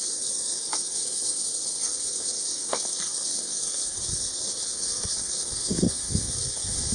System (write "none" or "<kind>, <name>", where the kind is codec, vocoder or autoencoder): codec, SNAC